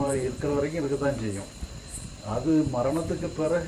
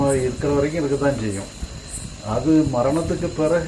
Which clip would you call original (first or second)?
second